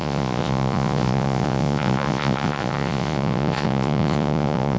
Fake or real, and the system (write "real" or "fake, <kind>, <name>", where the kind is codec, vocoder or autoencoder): fake, vocoder, Vocos